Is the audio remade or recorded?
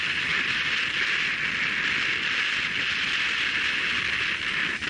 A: recorded